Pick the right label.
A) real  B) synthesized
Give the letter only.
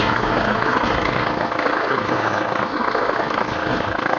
B